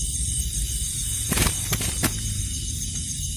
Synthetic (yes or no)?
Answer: yes